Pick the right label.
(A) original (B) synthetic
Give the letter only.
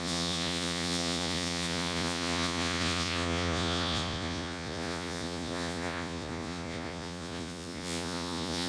B